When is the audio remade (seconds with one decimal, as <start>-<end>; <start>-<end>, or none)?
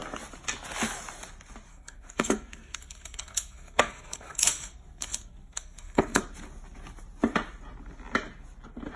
1.7-6.2